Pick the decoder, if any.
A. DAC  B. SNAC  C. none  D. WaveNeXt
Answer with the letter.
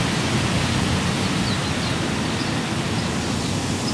C